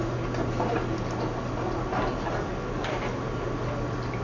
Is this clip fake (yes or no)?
no